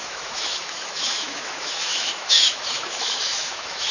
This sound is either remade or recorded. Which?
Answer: remade